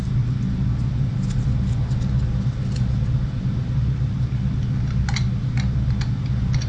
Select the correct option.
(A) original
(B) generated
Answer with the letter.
A